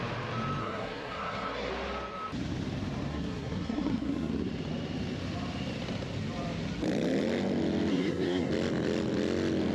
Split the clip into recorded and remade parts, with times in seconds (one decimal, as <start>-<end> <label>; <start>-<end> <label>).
0.0-0.6 recorded; 0.6-1.7 remade; 1.7-3.1 recorded; 3.1-4.3 remade; 4.3-7.9 recorded; 7.9-8.5 remade; 8.5-9.7 recorded